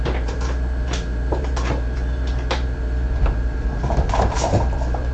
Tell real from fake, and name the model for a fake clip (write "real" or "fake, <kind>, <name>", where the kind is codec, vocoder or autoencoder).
fake, vocoder, BigVGAN v2